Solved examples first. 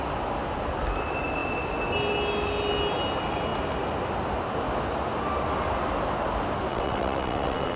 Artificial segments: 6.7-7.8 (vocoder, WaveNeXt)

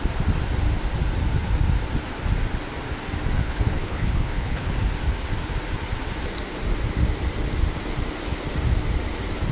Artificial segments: 3.4-4.7 (codec, HILCodec)

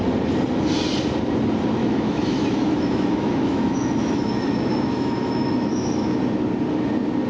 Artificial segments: 1.8-6.2 (autoencoder, DAC-VAE)

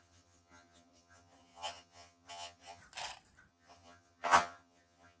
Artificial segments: 0.0-2.8 (vocoder, HiFi-GAN); 3.5-5.2